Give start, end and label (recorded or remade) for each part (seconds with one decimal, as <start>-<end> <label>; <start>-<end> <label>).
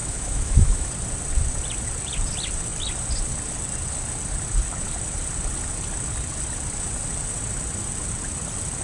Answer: 0.0-0.9 remade; 0.9-8.8 recorded